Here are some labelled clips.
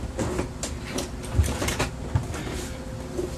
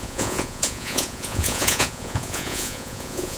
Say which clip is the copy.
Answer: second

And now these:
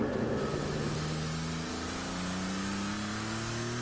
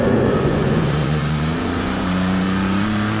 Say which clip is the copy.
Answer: second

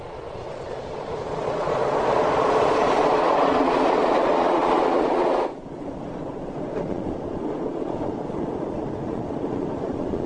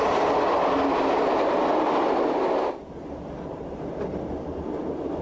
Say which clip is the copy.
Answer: first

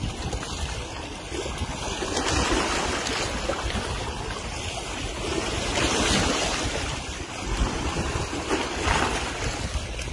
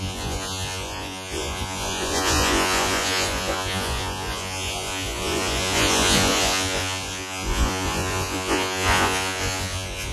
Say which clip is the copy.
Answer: second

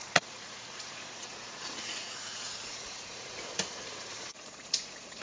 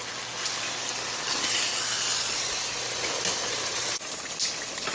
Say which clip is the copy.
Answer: first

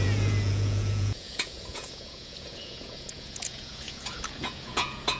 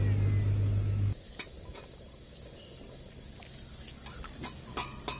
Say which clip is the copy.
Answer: first